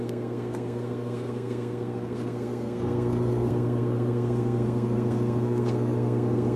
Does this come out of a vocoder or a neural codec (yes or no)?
yes